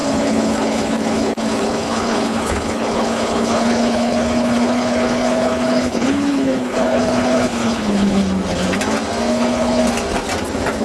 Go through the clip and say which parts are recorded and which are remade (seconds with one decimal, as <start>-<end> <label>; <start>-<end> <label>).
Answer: 0.0-8.2 remade; 8.2-9.3 recorded; 9.3-9.8 remade; 9.8-10.8 recorded